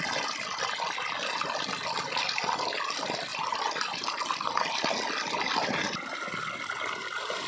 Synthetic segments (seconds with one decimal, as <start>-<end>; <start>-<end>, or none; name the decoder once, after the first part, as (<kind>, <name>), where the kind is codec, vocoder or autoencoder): none